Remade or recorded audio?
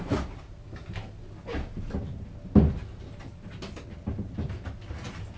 recorded